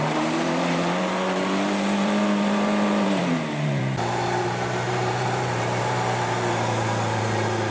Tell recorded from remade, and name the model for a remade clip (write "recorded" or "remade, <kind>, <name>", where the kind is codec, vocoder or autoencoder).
remade, vocoder, BigVGAN v2